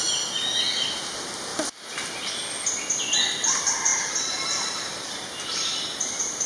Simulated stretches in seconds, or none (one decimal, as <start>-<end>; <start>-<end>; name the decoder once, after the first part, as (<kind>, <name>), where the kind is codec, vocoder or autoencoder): 1.5-2.3 (vocoder, BigVGAN v2); 3.9-6.5